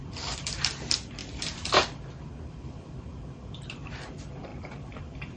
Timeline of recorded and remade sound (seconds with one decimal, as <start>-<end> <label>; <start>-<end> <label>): 0.0-5.4 remade